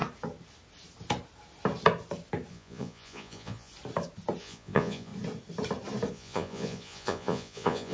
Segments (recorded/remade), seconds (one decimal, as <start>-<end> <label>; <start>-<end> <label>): 0.0-2.5 recorded; 2.5-3.7 remade; 3.7-4.4 recorded; 4.4-5.1 remade; 5.1-6.1 recorded; 6.1-7.9 remade